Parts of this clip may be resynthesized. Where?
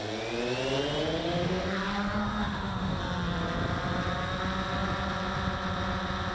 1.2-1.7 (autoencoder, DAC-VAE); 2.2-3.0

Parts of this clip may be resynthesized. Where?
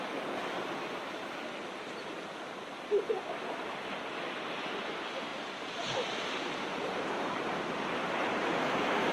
0.0-0.4 (vocoder, BigVGAN v2); 4.4-5.3; 6.4-9.1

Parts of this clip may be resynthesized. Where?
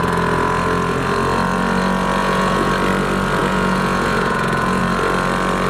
2.2-2.7 (vocoder, Vocos); 3.4-4.8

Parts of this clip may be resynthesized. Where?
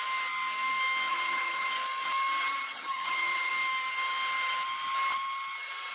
1.1-1.7 (vocoder, HiFi-GAN); 2.4-3.5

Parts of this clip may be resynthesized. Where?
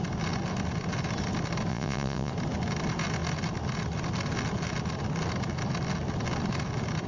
1.7-2.3 (vocoder, Vocos)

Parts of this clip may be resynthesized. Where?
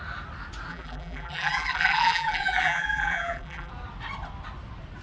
0.7-3.7 (vocoder, BigVGAN v2)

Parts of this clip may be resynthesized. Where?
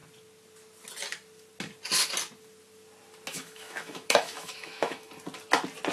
3.3-5.1 (autoencoder, DAC-VAE)